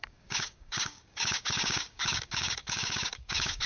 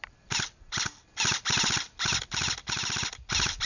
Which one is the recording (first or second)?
second